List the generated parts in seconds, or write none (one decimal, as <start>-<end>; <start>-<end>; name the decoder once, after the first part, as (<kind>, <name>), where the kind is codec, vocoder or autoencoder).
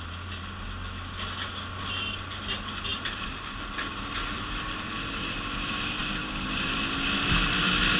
none